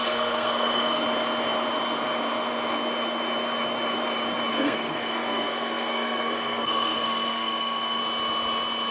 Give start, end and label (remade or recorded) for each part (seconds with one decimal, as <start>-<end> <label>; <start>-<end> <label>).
0.0-1.0 remade; 1.0-4.5 recorded; 4.5-8.0 remade; 8.0-8.9 recorded